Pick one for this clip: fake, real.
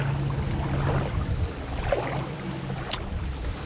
real